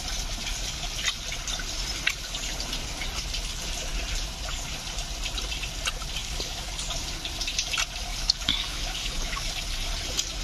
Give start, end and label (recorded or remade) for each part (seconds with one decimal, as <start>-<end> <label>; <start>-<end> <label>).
0.0-6.2 recorded; 6.2-6.7 remade; 6.7-8.1 recorded; 8.1-9.5 remade; 9.5-10.4 recorded